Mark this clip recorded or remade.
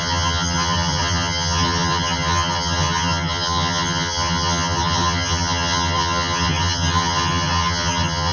remade